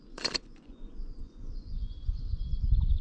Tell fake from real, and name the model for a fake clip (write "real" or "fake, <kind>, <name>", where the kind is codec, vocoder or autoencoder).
fake, vocoder, Vocos